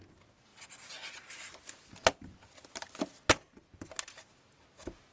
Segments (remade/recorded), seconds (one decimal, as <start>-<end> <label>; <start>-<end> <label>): 0.0-5.1 recorded